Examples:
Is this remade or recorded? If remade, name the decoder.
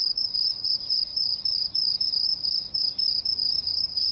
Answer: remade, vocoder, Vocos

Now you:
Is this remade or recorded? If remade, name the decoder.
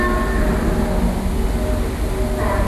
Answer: recorded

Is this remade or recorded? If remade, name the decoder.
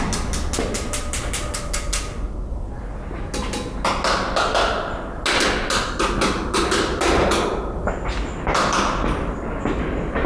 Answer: recorded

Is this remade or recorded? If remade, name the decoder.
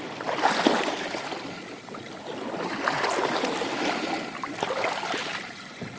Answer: recorded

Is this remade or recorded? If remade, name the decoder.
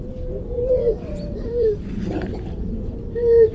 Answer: remade, vocoder, BigVGAN v2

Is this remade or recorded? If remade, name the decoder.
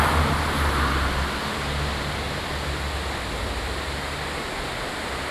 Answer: recorded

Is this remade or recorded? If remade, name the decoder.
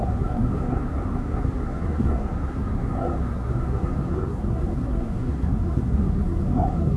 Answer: remade, codec, SNAC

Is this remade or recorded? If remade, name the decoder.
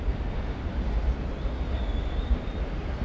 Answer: recorded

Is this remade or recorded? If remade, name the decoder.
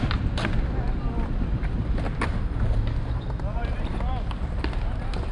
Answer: recorded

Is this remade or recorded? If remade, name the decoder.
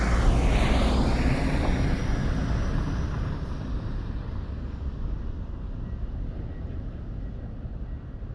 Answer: recorded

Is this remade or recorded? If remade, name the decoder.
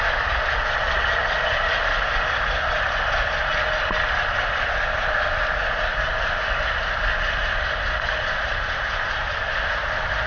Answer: recorded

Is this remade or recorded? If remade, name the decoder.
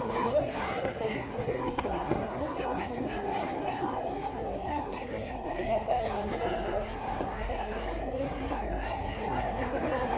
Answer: remade, codec, SNAC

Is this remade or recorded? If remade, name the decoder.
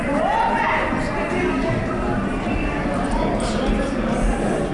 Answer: recorded